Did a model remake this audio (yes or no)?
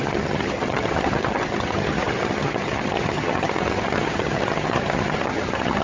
yes